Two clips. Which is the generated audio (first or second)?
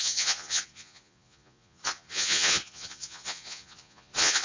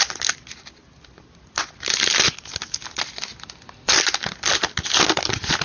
first